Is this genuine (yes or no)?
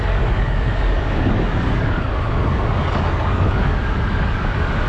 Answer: no